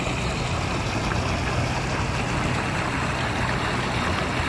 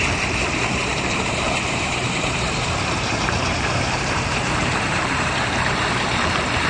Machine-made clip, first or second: second